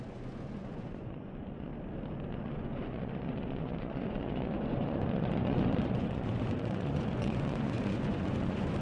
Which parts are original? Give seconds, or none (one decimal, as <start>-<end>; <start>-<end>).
1.7-2.3